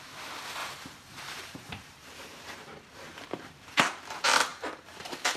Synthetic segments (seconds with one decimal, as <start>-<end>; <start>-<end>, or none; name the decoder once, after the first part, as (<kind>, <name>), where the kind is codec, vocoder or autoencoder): 0.6-3.8 (vocoder, BigVGAN v2); 4.5-5.4